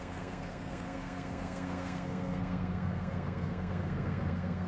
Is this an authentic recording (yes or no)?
no